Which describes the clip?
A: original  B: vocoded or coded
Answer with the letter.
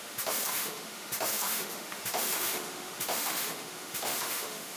B